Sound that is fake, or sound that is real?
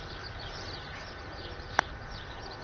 fake